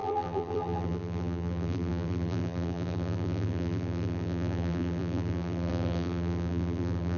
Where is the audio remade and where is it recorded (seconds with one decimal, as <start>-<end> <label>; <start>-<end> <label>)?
0.0-7.2 remade